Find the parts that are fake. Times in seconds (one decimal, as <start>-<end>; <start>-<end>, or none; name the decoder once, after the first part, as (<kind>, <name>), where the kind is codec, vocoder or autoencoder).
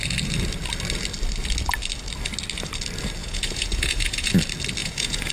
3.2-4.3 (vocoder, Vocos); 4.8-5.3